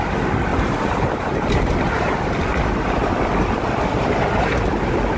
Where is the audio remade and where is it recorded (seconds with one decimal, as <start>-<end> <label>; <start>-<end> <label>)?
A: 0.0-0.5 recorded; 0.5-1.5 remade; 1.5-5.2 recorded